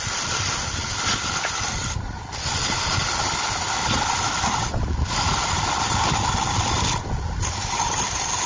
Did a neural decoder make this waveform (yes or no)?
no